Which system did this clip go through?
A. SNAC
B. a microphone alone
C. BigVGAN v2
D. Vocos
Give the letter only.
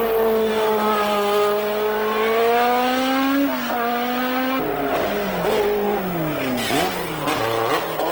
B